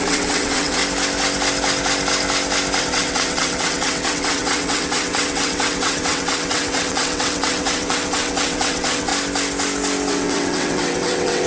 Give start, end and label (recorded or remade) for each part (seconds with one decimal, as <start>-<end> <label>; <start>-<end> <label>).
0.0-0.8 remade; 0.8-2.8 recorded; 2.8-9.1 remade; 9.1-10.1 recorded; 10.1-11.5 remade